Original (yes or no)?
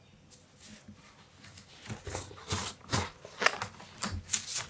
yes